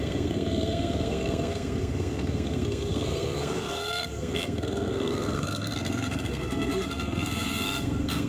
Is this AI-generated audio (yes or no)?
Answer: yes